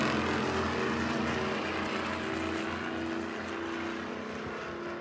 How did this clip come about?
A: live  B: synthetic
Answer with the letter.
A